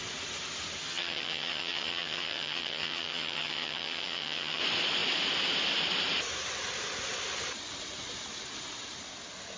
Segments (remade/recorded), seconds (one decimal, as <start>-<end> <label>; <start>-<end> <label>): 0.0-0.8 recorded; 0.8-4.6 remade; 4.6-9.6 recorded